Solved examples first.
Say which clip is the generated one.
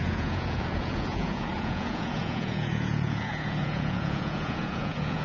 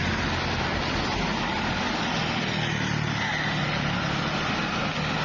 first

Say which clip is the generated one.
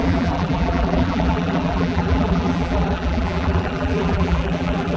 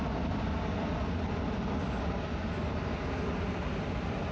first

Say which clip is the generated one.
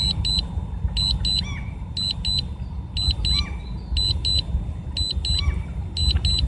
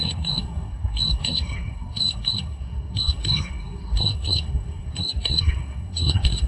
second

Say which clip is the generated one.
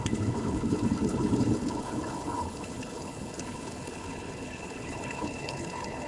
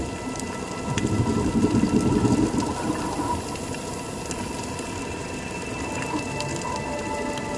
first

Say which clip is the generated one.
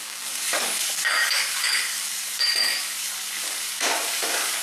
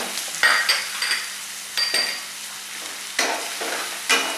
first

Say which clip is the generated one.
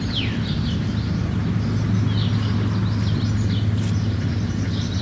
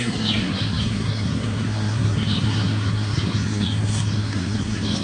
second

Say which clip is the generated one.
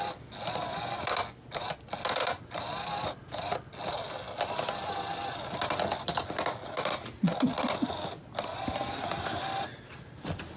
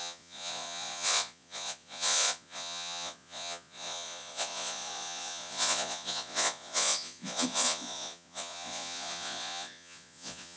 second